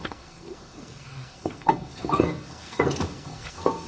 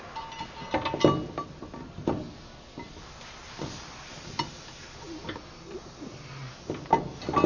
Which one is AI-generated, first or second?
first